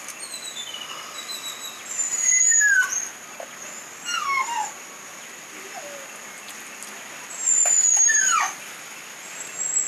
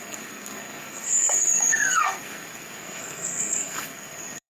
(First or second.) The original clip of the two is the first